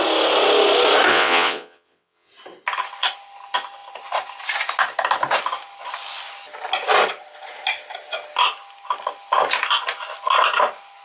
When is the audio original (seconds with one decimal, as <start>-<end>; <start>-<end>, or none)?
0.0-1.1; 2.3-11.0